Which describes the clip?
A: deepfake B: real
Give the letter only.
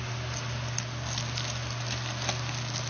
B